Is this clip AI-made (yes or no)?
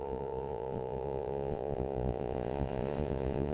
yes